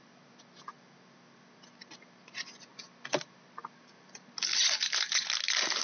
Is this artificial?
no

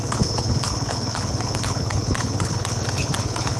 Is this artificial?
yes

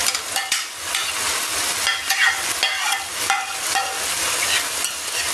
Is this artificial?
no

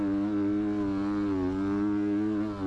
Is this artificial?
no